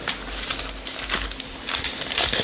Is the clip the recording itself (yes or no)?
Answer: yes